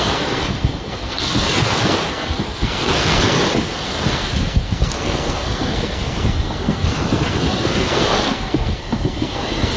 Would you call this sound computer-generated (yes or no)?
yes